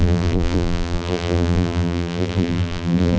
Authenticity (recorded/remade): remade